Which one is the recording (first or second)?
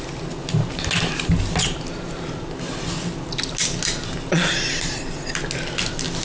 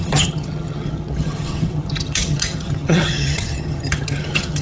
first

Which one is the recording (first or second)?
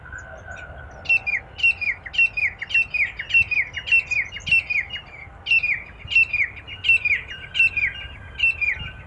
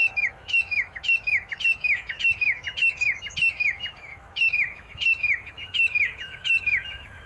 first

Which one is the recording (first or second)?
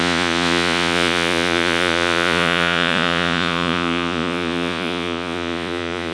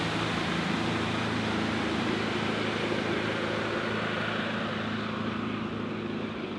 second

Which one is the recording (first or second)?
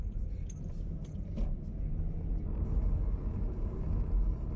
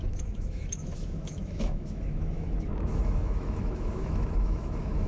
first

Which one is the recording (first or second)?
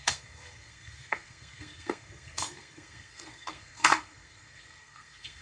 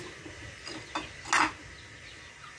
second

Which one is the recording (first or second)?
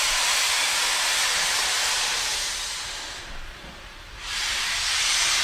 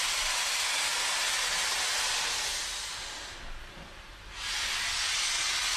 second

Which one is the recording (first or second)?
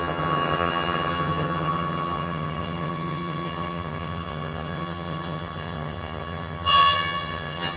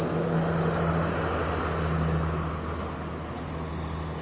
second